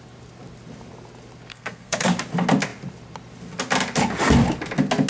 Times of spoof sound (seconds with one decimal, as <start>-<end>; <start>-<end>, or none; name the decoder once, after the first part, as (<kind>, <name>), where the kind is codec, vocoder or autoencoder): 1.5-2.1 (codec, SNAC)